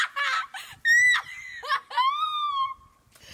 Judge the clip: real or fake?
real